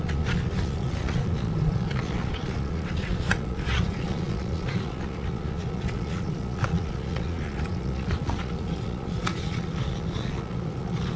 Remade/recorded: remade